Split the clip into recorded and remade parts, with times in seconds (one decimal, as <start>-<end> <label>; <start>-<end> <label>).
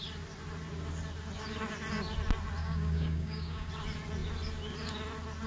0.0-2.6 recorded; 2.6-3.7 remade; 3.7-5.5 recorded